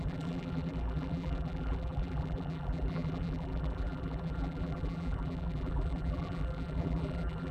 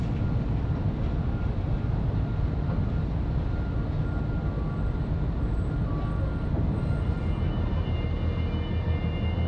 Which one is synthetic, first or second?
first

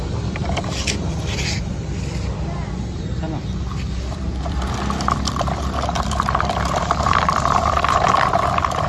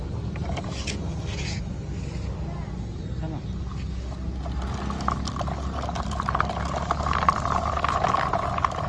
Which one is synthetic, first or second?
first